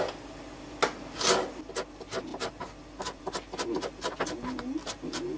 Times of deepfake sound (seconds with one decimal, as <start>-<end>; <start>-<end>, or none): none